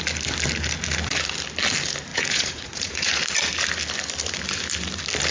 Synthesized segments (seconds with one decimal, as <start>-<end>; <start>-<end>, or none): 2.1-3.2

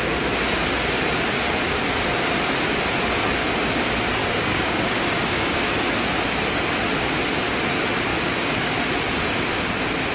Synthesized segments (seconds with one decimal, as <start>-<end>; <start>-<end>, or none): 4.2-5.6; 8.1-8.7

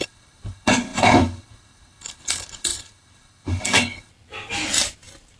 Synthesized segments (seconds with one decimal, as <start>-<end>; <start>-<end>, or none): 0.0-4.1

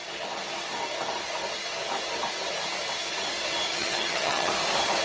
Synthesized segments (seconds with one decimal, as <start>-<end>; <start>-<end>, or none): 3.7-4.5

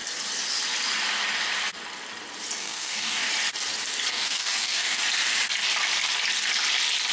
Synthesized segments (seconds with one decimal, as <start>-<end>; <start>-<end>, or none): 2.6-3.3; 4.1-5.0

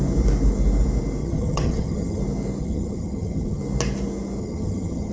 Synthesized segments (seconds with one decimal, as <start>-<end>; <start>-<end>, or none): 1.2-2.2; 2.6-3.6; 4.4-5.1